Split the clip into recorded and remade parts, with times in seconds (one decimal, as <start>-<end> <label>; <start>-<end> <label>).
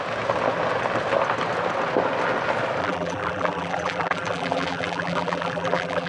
0.0-2.8 recorded; 2.8-6.1 remade